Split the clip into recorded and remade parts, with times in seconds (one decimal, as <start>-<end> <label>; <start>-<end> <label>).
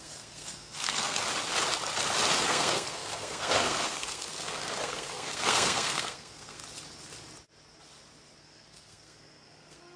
0.0-1.2 remade; 1.2-2.4 recorded; 2.4-6.6 remade; 6.6-8.4 recorded; 8.4-10.0 remade